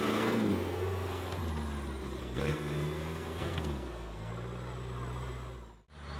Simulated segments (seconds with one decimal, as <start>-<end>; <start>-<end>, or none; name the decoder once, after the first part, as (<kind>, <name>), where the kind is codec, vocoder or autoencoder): 0.0-1.4 (codec, SNAC); 2.2-4.3